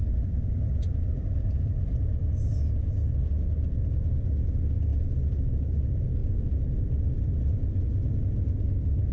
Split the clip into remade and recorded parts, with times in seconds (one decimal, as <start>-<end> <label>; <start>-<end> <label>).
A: 0.0-9.1 recorded